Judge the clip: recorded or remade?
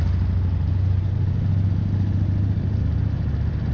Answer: recorded